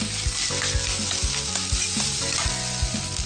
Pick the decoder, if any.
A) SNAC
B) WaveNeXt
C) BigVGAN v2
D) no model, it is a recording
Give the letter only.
D